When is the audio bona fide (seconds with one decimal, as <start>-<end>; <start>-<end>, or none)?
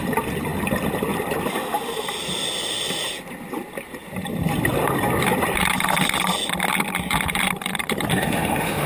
0.0-8.1